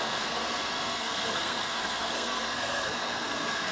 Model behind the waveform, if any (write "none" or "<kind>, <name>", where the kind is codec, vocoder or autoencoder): codec, SNAC